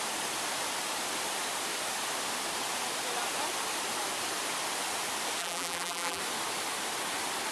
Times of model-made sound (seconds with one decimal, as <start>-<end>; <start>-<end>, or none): 5.4-6.2